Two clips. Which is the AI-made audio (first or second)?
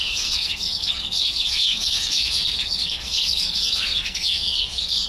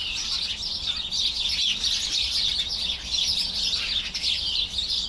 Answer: first